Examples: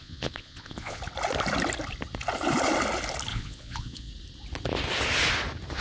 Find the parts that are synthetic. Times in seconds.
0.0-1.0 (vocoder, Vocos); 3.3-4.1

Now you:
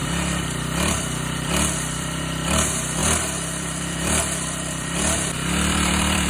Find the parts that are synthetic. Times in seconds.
0.0-2.2 (vocoder, BigVGAN v2); 3.0-6.3

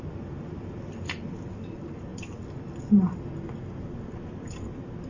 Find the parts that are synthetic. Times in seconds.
none